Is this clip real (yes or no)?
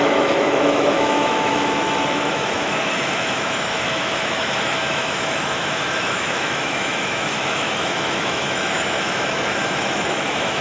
no